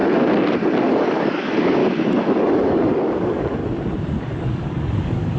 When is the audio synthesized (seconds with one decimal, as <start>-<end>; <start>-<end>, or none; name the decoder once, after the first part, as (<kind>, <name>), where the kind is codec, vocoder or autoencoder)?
0.9-1.8 (codec, DAC); 2.4-3.6; 4.2-5.4